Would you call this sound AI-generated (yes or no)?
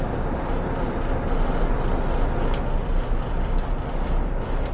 no